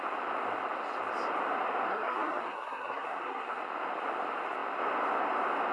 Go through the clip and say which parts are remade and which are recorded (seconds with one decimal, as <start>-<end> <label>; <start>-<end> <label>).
0.0-1.9 recorded; 1.9-3.6 remade; 3.6-5.7 recorded